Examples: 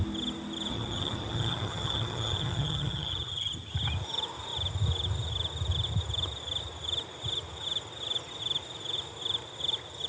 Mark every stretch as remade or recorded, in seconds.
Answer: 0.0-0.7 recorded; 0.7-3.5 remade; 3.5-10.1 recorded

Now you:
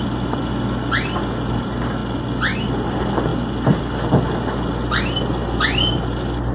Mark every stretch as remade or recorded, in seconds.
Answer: 0.0-6.5 recorded